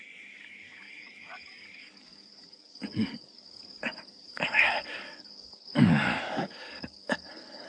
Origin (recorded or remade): remade